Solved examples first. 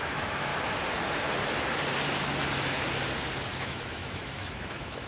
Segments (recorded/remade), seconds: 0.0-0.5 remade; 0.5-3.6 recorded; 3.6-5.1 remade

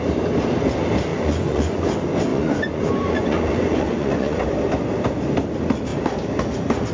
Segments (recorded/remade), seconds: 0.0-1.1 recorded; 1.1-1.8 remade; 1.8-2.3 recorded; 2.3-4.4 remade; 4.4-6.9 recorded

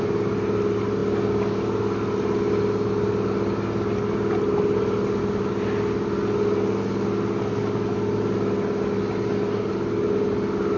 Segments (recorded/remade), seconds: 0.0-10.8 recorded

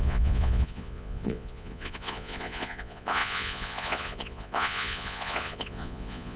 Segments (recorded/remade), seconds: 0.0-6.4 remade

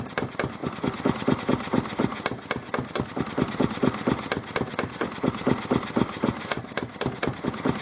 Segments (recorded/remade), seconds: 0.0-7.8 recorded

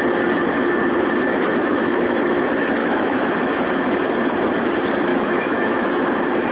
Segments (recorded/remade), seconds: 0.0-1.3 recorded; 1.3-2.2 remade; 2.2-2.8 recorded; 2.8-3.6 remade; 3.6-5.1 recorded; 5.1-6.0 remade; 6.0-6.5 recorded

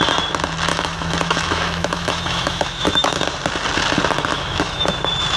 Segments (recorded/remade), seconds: 0.0-0.7 recorded; 0.7-3.2 remade; 3.2-4.3 recorded; 4.3-5.0 remade; 5.0-5.4 recorded

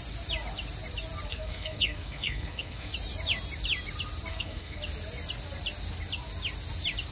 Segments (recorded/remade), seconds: 0.0-1.3 recorded; 1.3-2.9 remade; 2.9-4.3 recorded; 4.3-4.8 remade; 4.8-7.1 recorded